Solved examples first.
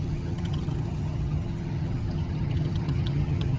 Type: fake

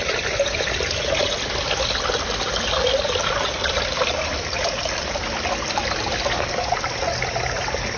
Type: real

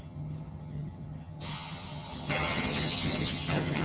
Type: fake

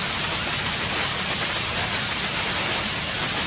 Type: real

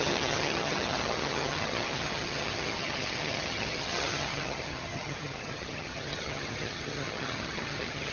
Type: fake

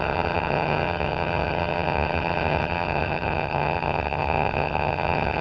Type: fake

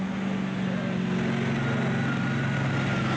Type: real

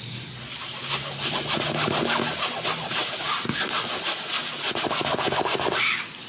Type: real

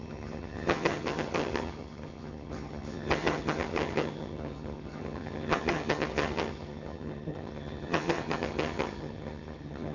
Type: fake